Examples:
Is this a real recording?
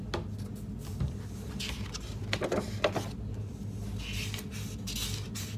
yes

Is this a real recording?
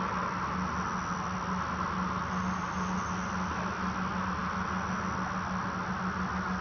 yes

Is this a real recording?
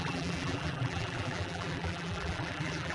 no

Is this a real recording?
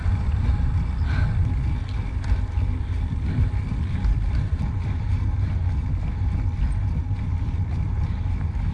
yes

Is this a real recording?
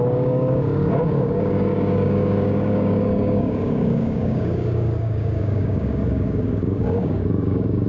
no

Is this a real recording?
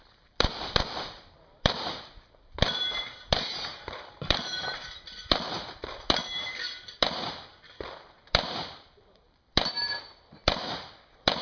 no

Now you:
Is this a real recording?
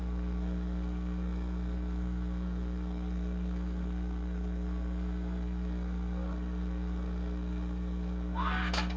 no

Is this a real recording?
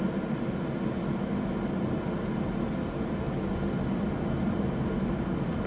yes